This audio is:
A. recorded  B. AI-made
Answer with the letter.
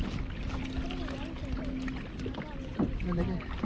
A